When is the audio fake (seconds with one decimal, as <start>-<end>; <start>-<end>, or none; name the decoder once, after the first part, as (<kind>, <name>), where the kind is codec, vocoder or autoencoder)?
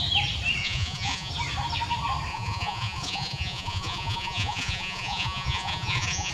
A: 0.6-1.3 (vocoder, Vocos); 2.3-6.3